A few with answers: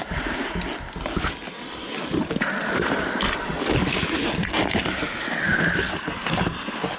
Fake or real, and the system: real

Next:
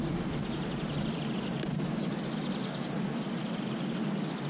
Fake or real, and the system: real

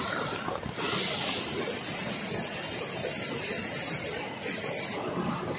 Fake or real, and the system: real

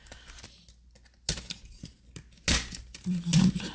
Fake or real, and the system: real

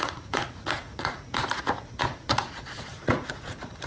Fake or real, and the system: fake, vocoder, Vocos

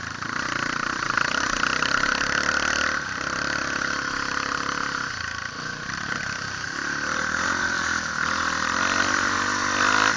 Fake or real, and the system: real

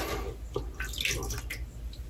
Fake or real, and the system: real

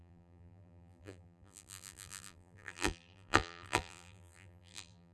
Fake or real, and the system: fake, vocoder, BigVGAN v2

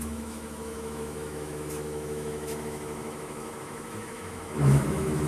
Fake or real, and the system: fake, autoencoder, DAC-VAE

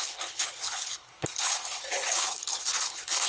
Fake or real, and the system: fake, codec, HILCodec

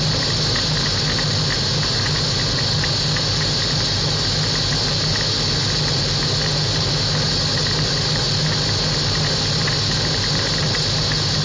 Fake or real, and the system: real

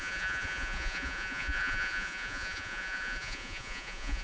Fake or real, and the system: fake, vocoder, Vocos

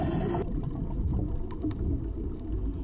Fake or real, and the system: real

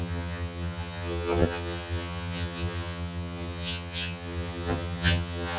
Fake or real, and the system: fake, vocoder, HiFi-GAN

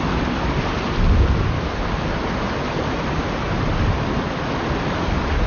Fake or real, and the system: real